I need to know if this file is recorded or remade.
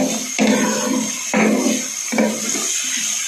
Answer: recorded